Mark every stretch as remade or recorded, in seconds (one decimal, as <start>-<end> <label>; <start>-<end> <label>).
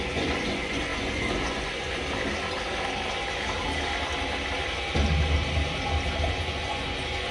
0.0-2.0 remade; 2.0-6.3 recorded; 6.3-7.3 remade